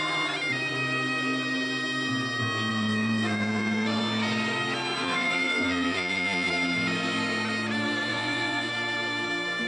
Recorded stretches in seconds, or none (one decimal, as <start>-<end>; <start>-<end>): 0.0-2.7; 4.0-5.0; 6.5-8.1; 8.7-9.7